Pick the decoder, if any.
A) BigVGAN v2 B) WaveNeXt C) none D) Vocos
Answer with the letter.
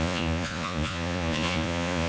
D